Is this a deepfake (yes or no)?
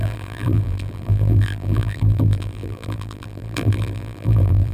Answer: yes